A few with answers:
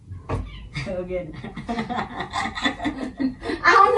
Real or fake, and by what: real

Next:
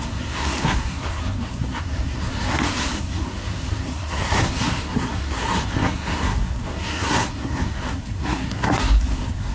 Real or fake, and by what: fake, codec, SNAC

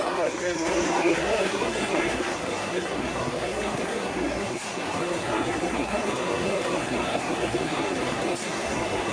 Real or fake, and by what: fake, codec, SNAC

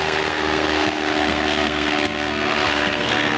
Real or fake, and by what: fake, codec, SNAC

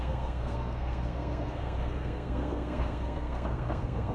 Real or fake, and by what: fake, codec, SNAC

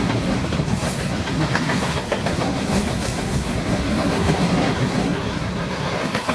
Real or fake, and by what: fake, codec, SNAC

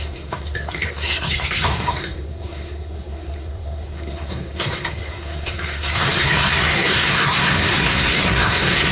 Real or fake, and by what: fake, codec, SNAC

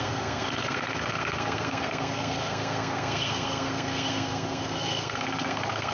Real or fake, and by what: fake, codec, SNAC